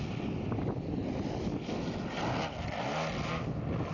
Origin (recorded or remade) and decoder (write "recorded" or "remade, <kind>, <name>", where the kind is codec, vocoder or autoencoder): recorded